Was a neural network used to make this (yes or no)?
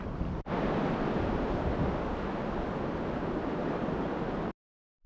no